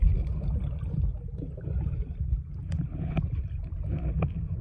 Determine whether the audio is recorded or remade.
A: recorded